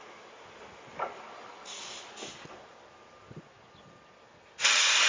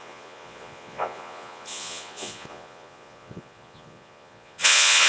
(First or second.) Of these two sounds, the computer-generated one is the second